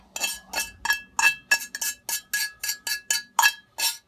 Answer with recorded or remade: recorded